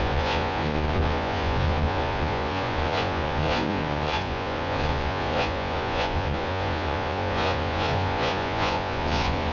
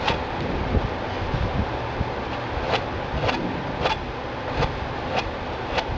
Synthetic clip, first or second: first